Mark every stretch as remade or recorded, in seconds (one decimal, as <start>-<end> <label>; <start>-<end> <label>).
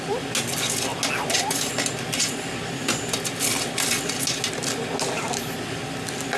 0.0-6.4 recorded